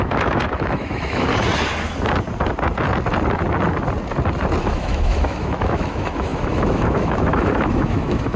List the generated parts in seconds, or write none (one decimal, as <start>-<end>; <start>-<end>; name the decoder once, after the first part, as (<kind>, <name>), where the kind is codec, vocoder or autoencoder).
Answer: 0.0-1.3 (autoencoder, DAC-VAE); 4.6-8.4